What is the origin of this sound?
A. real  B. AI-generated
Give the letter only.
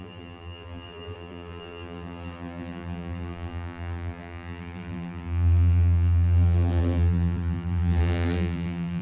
B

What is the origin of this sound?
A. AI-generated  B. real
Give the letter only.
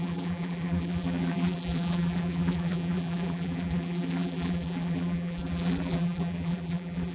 A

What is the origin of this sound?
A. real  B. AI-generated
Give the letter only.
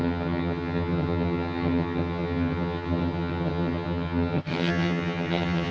B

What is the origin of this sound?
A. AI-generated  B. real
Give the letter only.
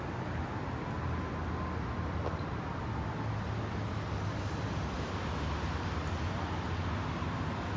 B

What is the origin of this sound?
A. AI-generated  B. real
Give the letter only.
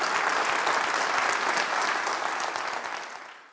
B